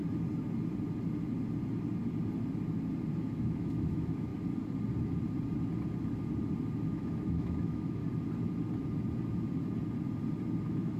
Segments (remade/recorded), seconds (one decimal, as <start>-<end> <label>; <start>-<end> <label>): 0.0-3.3 recorded; 3.3-4.3 remade; 4.3-6.9 recorded; 6.9-8.0 remade; 8.0-10.6 recorded; 10.6-11.0 remade